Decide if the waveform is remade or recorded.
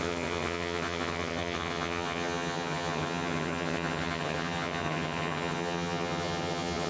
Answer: remade